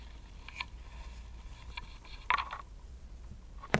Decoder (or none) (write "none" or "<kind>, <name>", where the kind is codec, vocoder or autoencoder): none